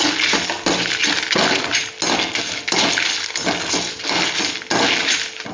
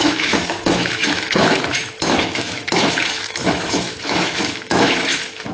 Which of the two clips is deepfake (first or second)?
second